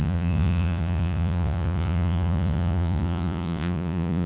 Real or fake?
fake